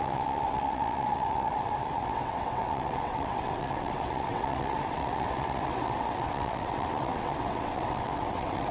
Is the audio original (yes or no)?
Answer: no